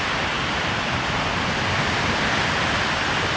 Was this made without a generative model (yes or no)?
yes